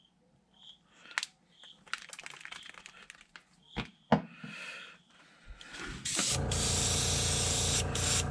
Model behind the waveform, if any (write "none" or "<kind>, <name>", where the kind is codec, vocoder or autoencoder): none